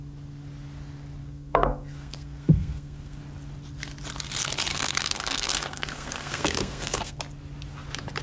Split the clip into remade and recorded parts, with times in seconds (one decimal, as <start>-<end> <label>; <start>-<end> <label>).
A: 0.0-1.2 recorded; 1.2-3.2 remade; 3.2-4.7 recorded; 4.7-7.2 remade; 7.2-8.2 recorded